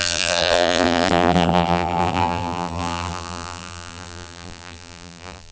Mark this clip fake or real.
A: fake